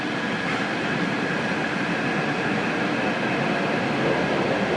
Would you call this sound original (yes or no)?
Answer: yes